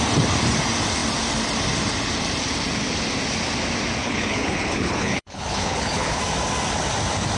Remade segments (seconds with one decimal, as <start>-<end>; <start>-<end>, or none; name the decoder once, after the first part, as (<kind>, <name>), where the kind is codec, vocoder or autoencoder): 4.0-6.2 (codec, HILCodec)